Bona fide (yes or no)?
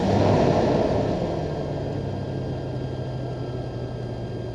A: yes